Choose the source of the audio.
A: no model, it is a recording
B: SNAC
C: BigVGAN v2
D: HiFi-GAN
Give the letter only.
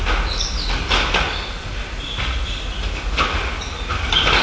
A